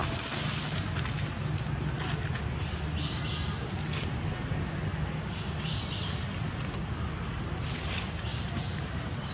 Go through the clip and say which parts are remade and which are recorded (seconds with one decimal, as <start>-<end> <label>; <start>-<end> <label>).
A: 0.0-8.3 recorded; 8.3-9.3 remade